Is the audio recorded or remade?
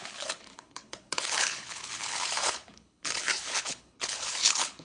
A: remade